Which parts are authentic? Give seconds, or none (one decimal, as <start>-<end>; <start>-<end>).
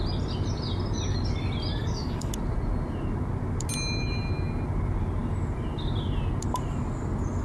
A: 0.0-1.8; 2.3-7.4